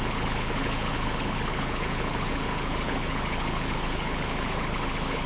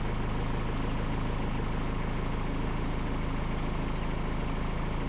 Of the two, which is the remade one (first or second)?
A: first